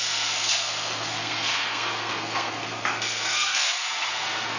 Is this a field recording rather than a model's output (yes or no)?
no